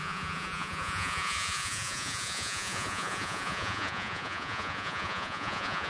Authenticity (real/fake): fake